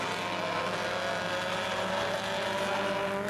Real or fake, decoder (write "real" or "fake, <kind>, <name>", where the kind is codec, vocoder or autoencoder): real